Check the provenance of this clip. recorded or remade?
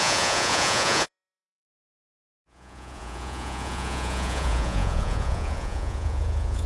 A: remade